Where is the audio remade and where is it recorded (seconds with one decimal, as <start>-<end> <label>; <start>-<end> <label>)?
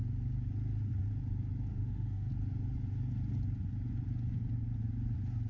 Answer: 0.0-1.7 recorded; 1.7-2.3 remade; 2.3-5.5 recorded